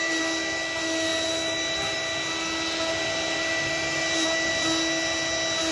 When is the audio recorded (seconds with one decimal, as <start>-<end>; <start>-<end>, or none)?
0.0-5.7